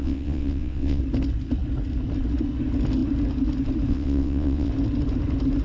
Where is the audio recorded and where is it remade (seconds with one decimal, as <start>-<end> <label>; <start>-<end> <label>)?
0.0-1.0 remade; 1.0-3.9 recorded; 3.9-4.7 remade; 4.7-5.6 recorded